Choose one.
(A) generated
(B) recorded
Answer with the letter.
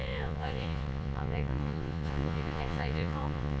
A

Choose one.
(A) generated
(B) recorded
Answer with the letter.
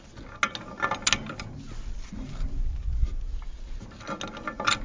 B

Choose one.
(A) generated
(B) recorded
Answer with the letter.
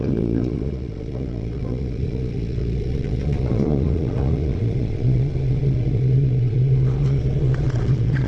A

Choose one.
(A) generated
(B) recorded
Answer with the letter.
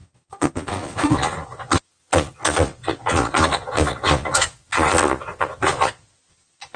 A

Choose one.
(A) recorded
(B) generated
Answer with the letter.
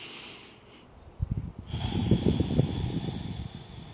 A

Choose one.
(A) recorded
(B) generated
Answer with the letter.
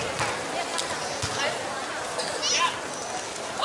A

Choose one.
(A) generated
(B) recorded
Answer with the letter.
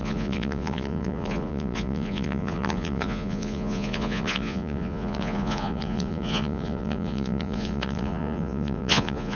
A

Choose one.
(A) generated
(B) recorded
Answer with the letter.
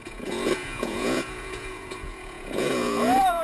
A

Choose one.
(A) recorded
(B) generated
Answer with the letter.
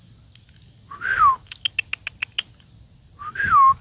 A